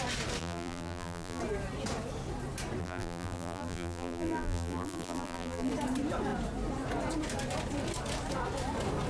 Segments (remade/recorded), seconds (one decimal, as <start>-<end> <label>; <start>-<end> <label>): 0.0-0.4 recorded; 0.4-1.4 remade; 1.4-2.8 recorded; 2.8-5.7 remade; 5.7-9.1 recorded